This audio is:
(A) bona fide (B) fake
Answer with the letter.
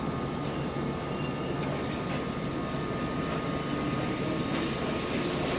A